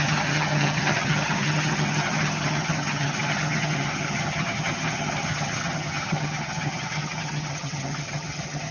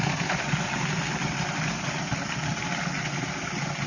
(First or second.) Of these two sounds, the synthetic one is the first